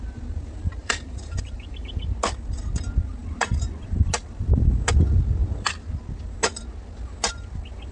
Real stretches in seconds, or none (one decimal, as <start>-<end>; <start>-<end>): 0.0-0.8; 2.0-7.9